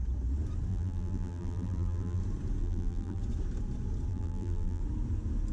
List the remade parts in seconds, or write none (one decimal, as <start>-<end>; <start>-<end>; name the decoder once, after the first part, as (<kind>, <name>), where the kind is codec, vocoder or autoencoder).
0.7-2.2 (vocoder, BigVGAN v2); 2.6-3.2; 4.1-4.8